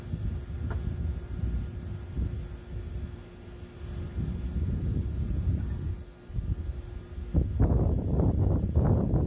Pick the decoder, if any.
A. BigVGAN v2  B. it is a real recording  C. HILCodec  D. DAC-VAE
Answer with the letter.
B